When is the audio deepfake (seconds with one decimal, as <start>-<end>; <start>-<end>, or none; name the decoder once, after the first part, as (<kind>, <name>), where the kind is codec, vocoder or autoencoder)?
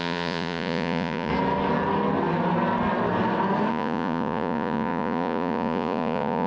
0.0-1.3 (vocoder, Vocos); 3.7-6.5